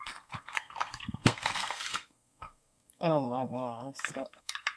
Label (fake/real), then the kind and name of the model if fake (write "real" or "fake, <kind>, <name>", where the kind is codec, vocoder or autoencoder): fake, codec, SNAC